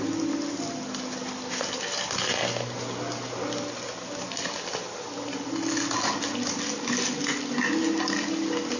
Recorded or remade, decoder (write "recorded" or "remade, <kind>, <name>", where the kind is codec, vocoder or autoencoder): recorded